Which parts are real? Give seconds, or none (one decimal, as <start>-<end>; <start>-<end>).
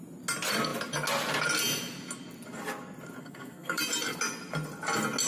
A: 0.0-3.2; 3.8-5.3